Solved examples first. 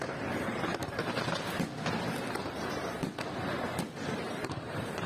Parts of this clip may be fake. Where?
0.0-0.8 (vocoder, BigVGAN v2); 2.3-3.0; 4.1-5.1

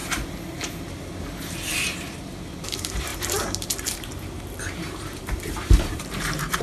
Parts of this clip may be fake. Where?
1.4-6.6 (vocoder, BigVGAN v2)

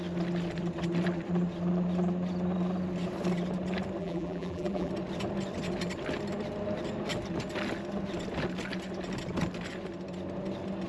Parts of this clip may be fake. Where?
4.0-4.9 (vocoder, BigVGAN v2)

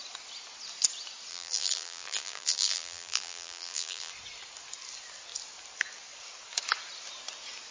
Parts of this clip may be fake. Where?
1.3-4.1 (vocoder, BigVGAN v2)

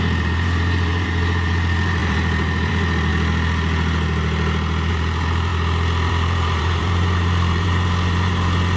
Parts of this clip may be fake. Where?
0.0-3.1 (vocoder, BigVGAN v2); 4.9-5.5; 6.1-8.8